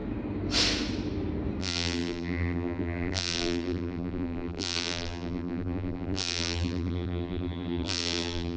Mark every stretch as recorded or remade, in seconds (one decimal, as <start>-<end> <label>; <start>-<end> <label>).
0.0-1.6 recorded; 1.6-8.6 remade